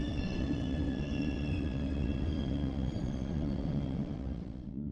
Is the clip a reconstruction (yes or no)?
yes